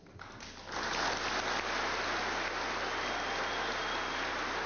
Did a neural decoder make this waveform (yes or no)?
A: no